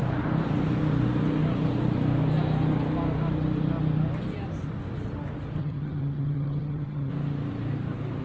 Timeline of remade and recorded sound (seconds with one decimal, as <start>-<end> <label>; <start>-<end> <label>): 0.0-5.6 recorded; 5.6-7.1 remade; 7.1-8.2 recorded